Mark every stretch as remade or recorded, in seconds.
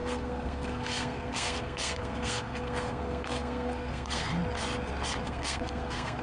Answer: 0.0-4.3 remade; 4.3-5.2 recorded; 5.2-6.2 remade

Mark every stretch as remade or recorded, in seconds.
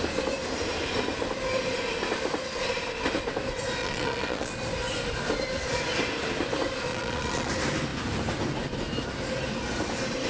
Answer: 0.0-3.8 recorded; 3.8-4.5 remade; 4.5-6.9 recorded; 6.9-7.5 remade; 7.5-10.3 recorded